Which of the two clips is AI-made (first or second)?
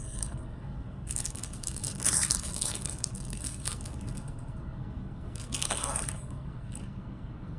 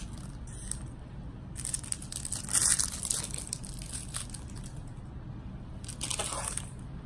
first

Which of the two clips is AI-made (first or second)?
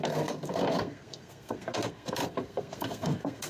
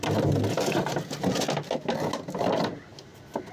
first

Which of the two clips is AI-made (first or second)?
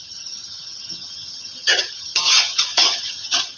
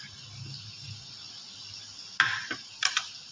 first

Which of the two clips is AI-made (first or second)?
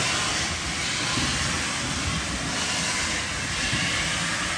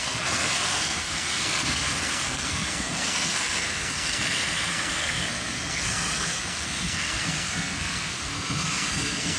second